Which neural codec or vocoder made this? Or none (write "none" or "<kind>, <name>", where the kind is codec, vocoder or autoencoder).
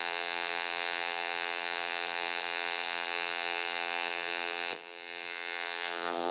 vocoder, BigVGAN v2